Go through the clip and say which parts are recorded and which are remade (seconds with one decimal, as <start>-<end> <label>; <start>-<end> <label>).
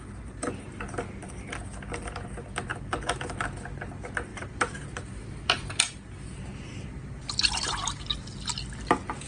0.0-4.3 recorded; 4.3-8.0 remade; 8.0-9.3 recorded